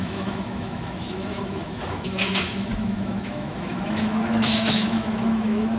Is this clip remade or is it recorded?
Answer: remade